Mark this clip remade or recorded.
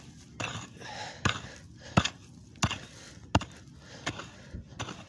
recorded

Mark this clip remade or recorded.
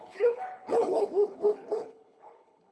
remade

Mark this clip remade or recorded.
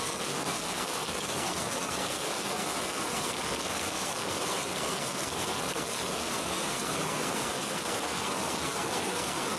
remade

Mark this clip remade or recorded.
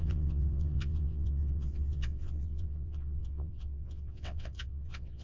remade